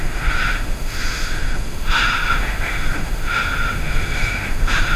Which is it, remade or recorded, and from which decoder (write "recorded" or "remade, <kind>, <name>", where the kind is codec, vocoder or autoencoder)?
remade, autoencoder, DAC-VAE